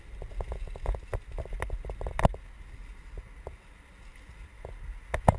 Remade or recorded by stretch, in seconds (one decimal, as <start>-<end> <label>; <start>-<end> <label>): 0.0-5.4 recorded